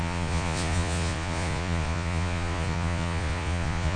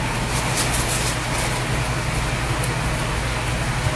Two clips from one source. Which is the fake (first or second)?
first